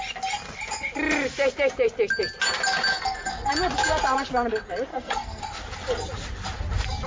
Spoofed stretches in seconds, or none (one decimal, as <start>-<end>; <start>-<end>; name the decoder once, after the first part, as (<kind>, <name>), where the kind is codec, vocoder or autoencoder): 2.9-3.5 (codec, SNAC); 4.9-5.4